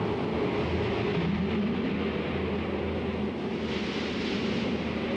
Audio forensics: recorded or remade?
recorded